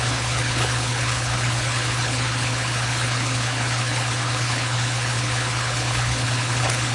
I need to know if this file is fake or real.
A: fake